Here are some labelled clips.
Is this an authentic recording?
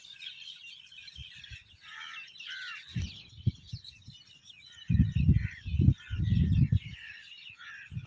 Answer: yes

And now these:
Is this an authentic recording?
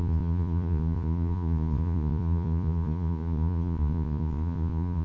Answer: no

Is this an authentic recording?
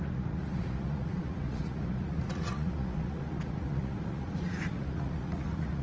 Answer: no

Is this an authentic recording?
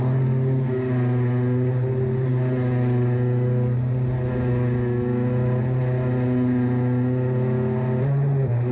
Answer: yes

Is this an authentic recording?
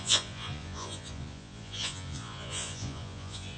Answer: no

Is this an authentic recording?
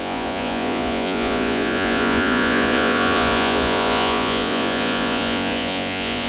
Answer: no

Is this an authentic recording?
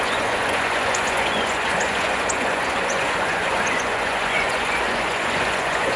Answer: no